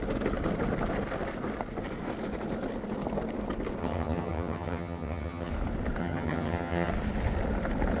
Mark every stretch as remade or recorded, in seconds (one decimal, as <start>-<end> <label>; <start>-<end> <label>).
0.0-3.8 recorded; 3.8-5.5 remade; 5.5-6.0 recorded; 6.0-6.9 remade; 6.9-8.0 recorded